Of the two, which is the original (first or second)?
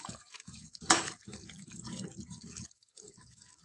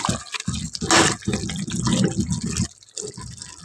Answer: second